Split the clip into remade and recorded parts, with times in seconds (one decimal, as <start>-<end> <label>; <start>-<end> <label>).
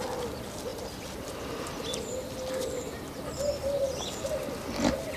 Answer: 0.0-5.2 recorded